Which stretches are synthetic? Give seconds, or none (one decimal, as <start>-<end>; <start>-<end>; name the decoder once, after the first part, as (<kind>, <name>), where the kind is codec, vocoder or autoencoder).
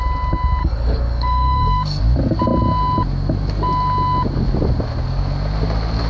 0.6-2.0 (codec, DAC)